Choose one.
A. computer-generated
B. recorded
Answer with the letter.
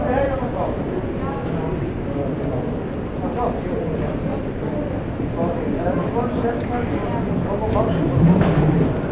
B